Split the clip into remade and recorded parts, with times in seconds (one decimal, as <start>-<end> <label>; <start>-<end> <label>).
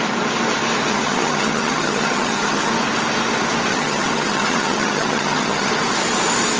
0.0-0.9 recorded; 0.9-2.7 remade; 2.7-3.7 recorded; 3.7-5.7 remade; 5.7-6.6 recorded